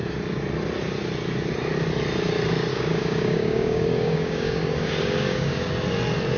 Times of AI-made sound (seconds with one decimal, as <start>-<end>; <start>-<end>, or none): 2.7-5.7